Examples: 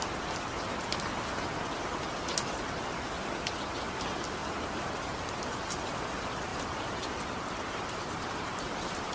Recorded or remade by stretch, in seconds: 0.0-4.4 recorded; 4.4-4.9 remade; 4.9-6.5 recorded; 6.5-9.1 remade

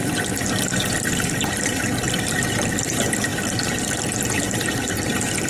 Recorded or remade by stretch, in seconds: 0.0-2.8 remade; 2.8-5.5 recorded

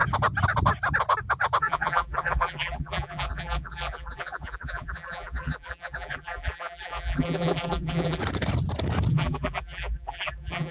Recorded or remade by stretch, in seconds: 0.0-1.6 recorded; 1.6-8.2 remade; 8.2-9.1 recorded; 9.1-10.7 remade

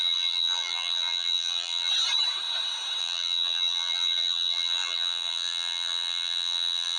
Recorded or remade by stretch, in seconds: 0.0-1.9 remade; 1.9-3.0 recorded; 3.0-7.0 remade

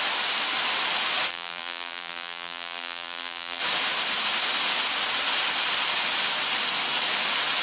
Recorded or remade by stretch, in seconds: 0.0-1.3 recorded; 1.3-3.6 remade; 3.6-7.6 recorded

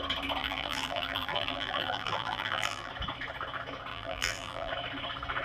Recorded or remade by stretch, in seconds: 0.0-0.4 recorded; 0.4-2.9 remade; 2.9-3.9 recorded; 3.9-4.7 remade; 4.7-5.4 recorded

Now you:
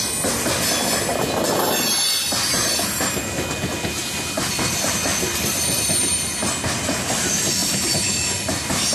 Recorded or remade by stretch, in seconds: 0.0-7.6 recorded; 7.6-8.9 remade

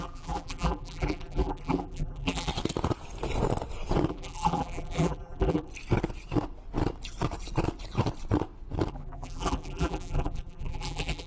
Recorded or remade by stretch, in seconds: 0.0-2.5 remade; 2.5-4.1 recorded; 4.1-5.7 remade; 5.7-8.9 recorded; 8.9-11.3 remade